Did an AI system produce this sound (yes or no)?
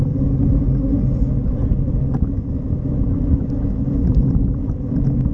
no